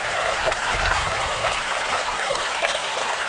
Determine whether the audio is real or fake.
fake